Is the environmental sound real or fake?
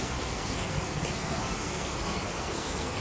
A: fake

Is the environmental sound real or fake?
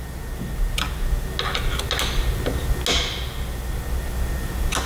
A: real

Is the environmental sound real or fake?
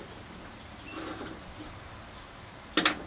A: real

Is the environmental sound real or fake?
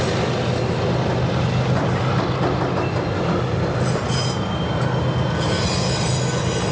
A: real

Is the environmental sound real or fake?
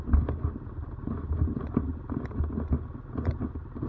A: real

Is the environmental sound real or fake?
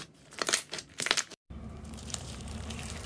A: fake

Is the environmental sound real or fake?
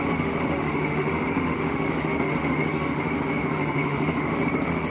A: fake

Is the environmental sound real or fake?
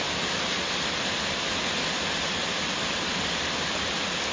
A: real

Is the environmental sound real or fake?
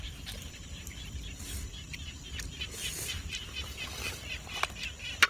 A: fake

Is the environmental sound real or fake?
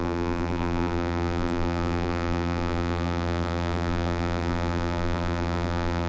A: fake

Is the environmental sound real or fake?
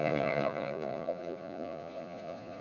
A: fake